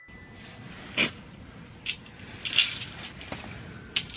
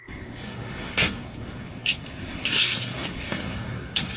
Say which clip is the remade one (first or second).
second